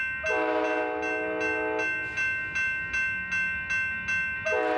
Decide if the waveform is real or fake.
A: real